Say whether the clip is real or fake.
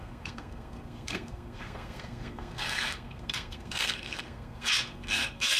fake